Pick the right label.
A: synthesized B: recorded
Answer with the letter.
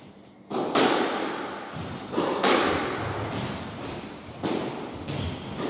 B